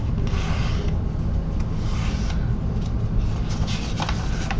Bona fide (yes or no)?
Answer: yes